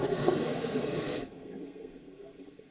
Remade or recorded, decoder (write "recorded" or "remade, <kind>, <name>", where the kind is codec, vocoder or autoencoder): remade, codec, SNAC